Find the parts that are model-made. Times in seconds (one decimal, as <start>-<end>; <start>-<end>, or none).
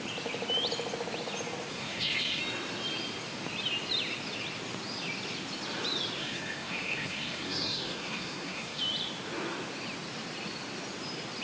1.7-2.4; 6.2-8.8